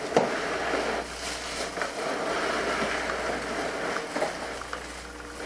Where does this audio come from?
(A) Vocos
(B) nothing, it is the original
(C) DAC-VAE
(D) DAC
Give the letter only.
B